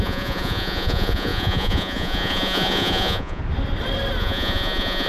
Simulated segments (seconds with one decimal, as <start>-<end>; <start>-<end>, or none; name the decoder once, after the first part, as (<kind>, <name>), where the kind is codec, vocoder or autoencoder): 0.0-3.4 (vocoder, Vocos); 4.2-5.1